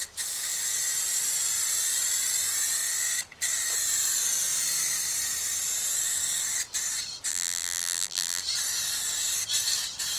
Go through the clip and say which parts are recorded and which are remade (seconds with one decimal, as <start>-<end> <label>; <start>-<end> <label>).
0.0-7.3 recorded; 7.3-8.4 remade; 8.4-10.2 recorded